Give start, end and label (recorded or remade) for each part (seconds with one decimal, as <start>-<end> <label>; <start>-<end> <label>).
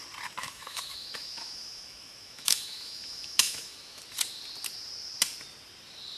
0.0-0.4 recorded; 0.4-4.0 remade; 4.0-6.2 recorded